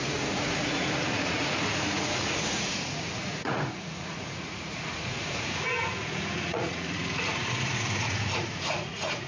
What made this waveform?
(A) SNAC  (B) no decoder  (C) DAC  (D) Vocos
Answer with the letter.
D